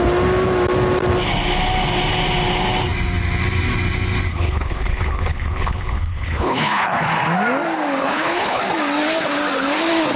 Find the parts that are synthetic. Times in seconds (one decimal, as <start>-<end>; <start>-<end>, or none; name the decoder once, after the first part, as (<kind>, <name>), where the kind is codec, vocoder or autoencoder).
4.3-7.1 (codec, HILCodec); 8.0-8.6